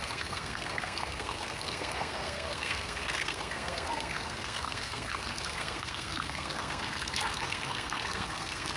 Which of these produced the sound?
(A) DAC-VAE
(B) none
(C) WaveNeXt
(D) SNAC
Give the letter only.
D